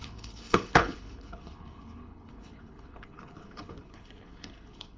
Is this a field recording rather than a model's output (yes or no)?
no